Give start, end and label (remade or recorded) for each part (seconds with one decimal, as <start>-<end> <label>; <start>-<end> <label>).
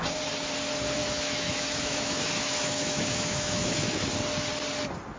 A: 0.0-1.0 recorded; 1.0-4.1 remade; 4.1-5.2 recorded